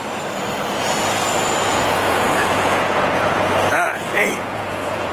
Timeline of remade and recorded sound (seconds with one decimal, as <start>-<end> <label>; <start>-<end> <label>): 0.0-1.7 recorded; 1.7-5.1 remade